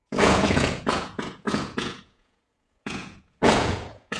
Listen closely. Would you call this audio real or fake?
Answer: fake